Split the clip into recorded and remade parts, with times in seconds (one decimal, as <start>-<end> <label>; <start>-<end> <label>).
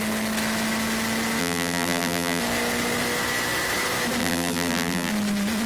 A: 0.0-1.4 recorded; 1.4-2.4 remade; 2.4-4.2 recorded; 4.2-5.1 remade; 5.1-5.7 recorded